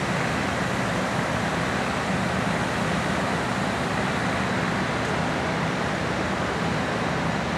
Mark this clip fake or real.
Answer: real